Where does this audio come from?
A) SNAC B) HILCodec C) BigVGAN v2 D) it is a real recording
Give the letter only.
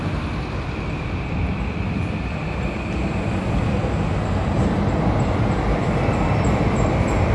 C